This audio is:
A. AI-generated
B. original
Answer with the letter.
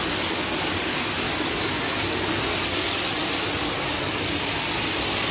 B